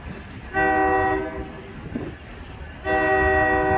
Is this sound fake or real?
real